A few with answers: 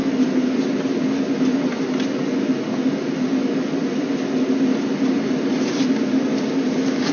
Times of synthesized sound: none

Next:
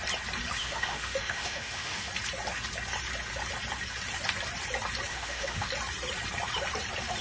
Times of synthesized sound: 0.6-2.1 (autoencoder, DAC-VAE); 5.1-5.7

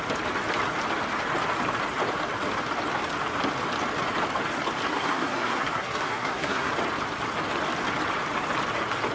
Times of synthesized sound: 4.9-6.7 (codec, SNAC)